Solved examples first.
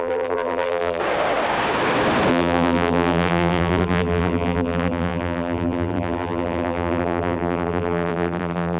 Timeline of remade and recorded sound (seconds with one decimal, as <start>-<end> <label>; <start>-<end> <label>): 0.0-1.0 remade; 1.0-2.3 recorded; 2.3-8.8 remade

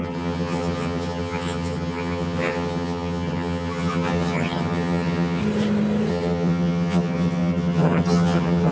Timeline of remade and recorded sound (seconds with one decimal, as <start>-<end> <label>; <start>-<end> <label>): 0.0-5.4 remade; 5.4-6.1 recorded; 6.1-8.7 remade

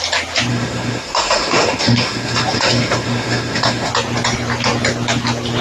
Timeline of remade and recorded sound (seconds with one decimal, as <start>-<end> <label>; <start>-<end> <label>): 0.0-0.5 recorded; 0.5-3.9 remade; 3.9-5.6 recorded

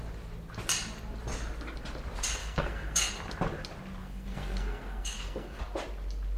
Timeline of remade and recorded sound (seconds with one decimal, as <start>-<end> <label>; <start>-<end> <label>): 0.0-2.4 recorded; 2.4-3.1 remade; 3.1-4.0 recorded; 4.0-5.6 remade; 5.6-6.4 recorded

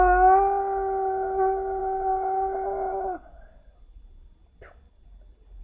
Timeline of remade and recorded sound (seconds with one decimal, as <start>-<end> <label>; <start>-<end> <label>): 0.0-5.6 recorded

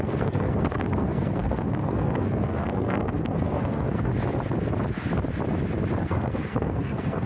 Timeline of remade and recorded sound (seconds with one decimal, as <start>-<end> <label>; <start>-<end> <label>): 0.0-4.1 remade; 4.1-6.0 recorded; 6.0-7.3 remade

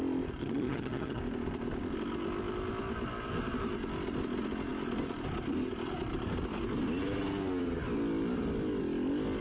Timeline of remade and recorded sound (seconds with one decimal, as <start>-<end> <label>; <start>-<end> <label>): 0.0-0.4 recorded; 0.4-1.2 remade; 1.2-9.4 recorded